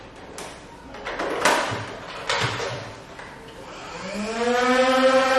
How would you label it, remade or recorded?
recorded